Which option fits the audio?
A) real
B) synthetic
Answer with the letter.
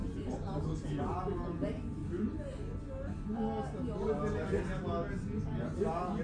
A